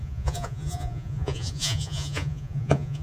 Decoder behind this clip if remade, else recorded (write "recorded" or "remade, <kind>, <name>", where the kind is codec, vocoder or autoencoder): remade, vocoder, Vocos